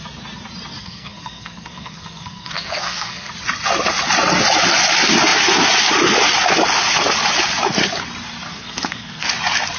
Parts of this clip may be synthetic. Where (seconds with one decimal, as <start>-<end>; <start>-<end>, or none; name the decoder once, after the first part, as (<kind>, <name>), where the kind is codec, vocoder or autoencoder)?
0.8-3.3 (codec, SNAC); 8.5-9.3